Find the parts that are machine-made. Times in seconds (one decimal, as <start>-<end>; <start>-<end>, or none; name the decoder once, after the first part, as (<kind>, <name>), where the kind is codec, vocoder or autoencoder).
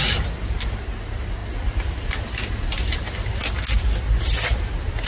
none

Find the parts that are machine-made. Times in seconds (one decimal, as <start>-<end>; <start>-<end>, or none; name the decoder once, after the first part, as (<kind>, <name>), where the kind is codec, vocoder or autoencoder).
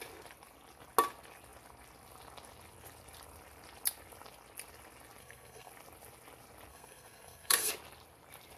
5.2-5.7 (codec, SNAC); 6.7-7.7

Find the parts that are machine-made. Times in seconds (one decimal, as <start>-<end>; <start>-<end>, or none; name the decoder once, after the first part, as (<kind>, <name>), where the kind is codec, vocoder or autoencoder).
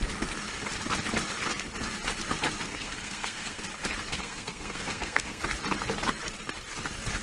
2.7-3.6 (codec, SNAC); 4.1-5.4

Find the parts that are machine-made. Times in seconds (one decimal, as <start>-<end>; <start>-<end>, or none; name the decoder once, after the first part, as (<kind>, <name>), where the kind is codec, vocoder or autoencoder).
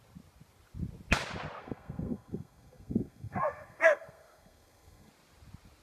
1.6-5.1 (codec, SNAC)